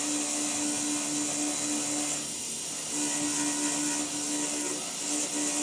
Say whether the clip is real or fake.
real